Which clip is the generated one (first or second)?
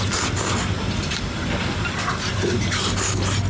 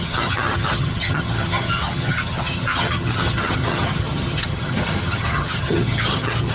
second